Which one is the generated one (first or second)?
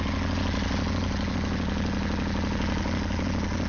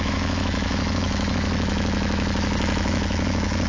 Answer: second